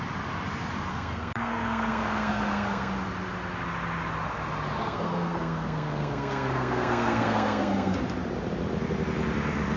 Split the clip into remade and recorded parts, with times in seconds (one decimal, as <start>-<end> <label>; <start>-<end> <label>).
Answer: 0.0-0.9 recorded; 0.9-2.9 remade; 2.9-4.8 recorded; 4.8-8.0 remade; 8.0-9.8 recorded